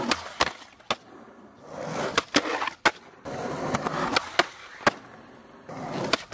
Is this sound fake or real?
real